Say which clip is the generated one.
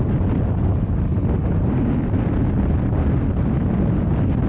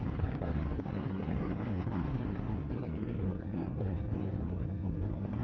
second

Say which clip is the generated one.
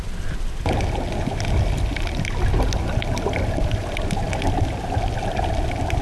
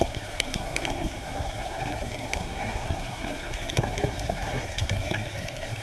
second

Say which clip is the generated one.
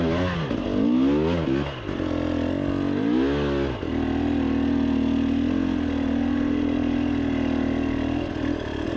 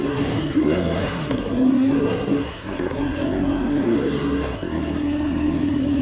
second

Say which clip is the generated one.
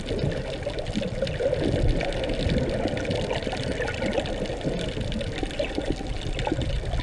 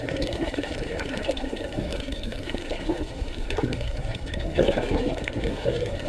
second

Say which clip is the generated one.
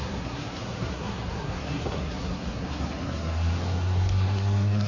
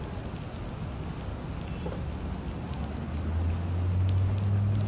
first